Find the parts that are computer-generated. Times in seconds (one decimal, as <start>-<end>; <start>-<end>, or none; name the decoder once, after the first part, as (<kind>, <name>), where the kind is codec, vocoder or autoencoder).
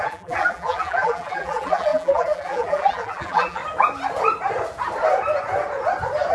0.0-3.6 (vocoder, BigVGAN v2)